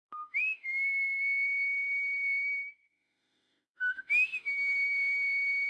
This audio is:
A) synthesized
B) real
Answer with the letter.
A